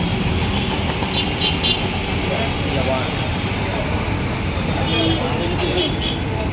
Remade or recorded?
recorded